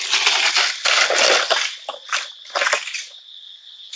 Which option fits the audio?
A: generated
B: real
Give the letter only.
B